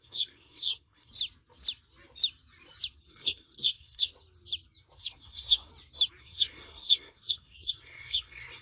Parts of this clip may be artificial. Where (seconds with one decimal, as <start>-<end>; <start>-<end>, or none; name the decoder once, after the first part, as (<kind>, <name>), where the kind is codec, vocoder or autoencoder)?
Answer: 0.0-1.1 (codec, SNAC); 3.1-4.1; 5.0-5.7; 6.2-8.6